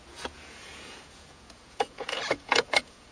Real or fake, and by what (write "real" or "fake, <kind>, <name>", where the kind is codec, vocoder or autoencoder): fake, vocoder, Vocos